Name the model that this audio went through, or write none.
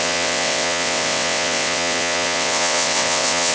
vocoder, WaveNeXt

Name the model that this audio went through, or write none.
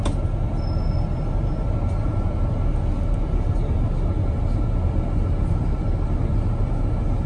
none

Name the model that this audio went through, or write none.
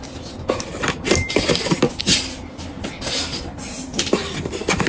none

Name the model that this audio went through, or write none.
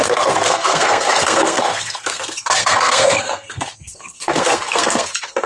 codec, SNAC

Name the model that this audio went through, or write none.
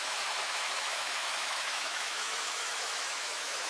autoencoder, DAC-VAE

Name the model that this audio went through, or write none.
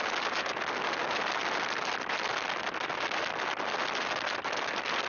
none